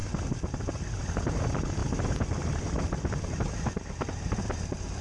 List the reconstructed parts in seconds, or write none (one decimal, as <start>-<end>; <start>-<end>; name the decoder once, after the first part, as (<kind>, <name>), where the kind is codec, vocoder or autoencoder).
none